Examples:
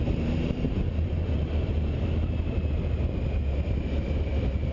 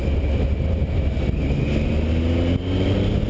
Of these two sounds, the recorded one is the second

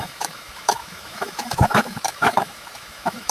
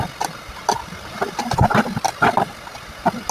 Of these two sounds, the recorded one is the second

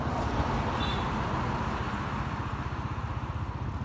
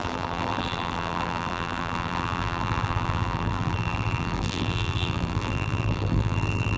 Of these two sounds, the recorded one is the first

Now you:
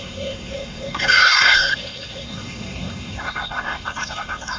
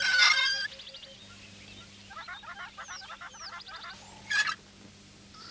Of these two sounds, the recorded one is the second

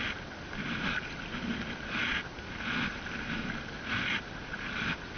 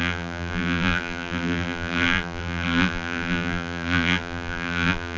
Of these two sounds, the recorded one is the first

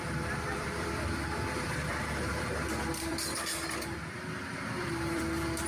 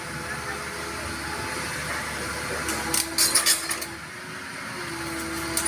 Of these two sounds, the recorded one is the second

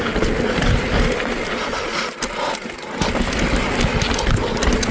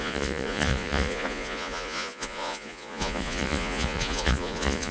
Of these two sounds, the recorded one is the first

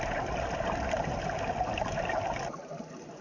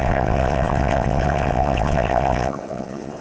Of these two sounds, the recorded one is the first